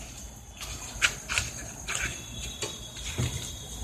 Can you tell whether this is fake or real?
fake